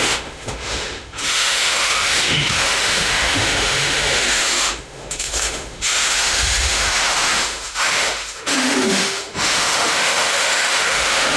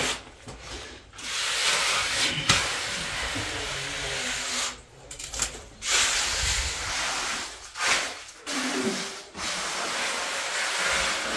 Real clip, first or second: second